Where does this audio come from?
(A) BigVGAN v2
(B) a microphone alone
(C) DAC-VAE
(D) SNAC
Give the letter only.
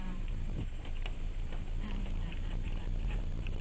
A